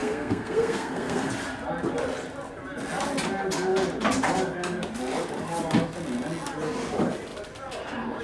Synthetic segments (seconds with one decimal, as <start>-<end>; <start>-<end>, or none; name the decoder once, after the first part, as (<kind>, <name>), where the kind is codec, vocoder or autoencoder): 0.0-1.3 (codec, SNAC)